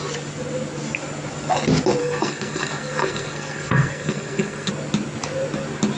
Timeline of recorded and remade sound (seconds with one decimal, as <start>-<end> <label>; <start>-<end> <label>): 0.0-2.0 recorded; 2.0-4.7 remade; 4.7-6.0 recorded